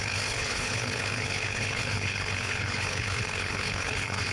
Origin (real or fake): fake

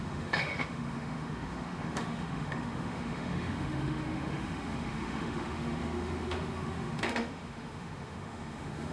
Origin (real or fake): fake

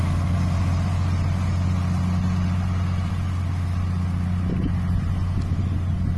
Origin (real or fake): real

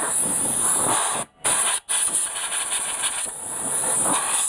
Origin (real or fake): real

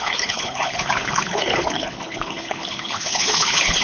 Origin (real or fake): fake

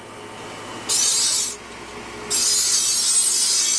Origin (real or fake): real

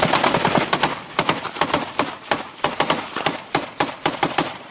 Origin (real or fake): real